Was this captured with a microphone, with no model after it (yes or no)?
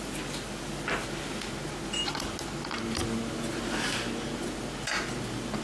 yes